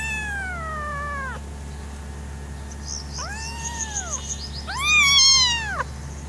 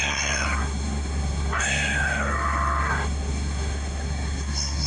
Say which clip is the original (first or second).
first